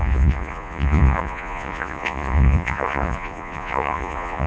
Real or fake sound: fake